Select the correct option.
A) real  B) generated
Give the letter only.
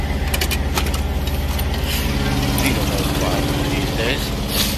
A